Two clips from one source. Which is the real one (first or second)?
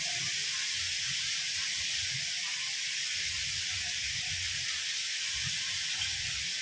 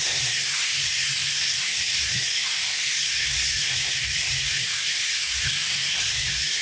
first